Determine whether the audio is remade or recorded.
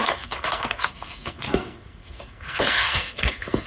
remade